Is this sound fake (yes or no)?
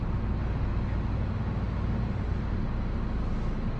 no